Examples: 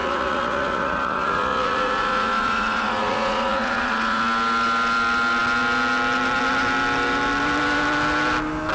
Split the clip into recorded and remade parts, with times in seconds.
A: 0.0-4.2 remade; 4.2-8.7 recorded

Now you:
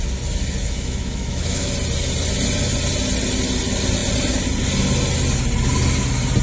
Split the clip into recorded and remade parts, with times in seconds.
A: 0.0-0.6 recorded; 0.6-1.7 remade; 1.7-6.4 recorded